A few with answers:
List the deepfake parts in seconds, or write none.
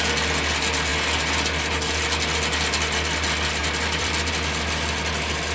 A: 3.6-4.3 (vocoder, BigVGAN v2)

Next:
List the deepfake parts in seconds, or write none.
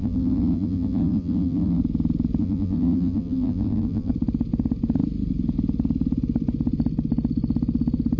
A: 0.0-1.8 (vocoder, BigVGAN v2); 2.4-4.1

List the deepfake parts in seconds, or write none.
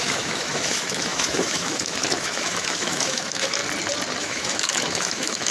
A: 0.0-3.6 (autoencoder, DAC-VAE); 4.2-5.5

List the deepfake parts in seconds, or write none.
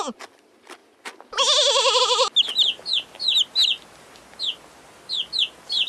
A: none